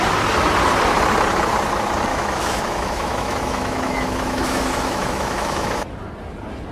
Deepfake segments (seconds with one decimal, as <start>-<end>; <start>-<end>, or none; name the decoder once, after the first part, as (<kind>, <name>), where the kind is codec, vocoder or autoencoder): 2.1-5.7 (autoencoder, DAC-VAE)